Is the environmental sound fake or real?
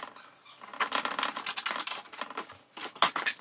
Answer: real